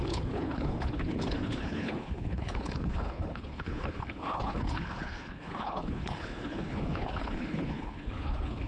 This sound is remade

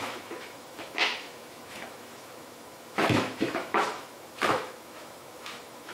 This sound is remade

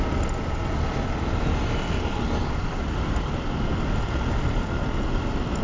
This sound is recorded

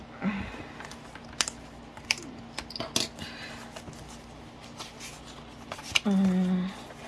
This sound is recorded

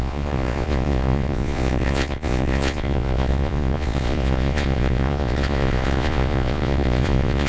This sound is remade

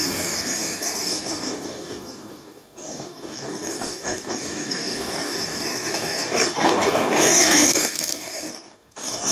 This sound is remade